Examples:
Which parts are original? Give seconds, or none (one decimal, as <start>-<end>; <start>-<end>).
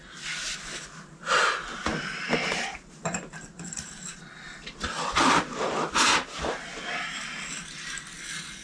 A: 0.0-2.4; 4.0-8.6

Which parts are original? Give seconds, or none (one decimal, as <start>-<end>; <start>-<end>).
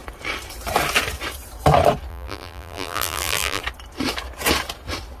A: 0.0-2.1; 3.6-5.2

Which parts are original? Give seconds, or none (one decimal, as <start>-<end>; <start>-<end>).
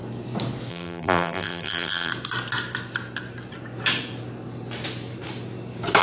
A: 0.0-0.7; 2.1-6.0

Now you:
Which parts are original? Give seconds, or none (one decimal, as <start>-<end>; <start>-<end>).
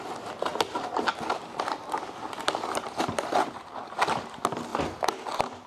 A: 0.0-0.5; 3.9-5.7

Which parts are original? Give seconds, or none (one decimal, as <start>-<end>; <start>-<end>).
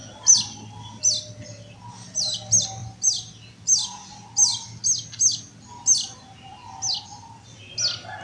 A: 0.0-8.2